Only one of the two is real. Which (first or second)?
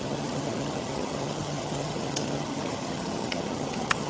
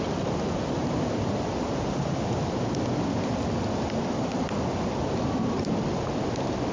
second